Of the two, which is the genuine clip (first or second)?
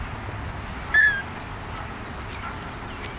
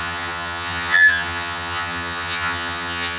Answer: first